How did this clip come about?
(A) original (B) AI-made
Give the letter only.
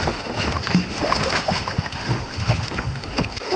B